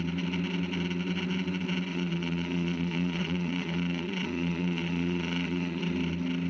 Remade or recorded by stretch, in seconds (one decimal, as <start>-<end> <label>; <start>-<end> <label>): 0.0-1.9 recorded; 1.9-5.8 remade; 5.8-6.5 recorded